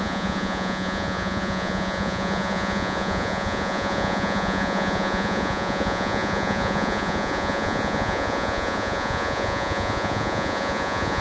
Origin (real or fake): fake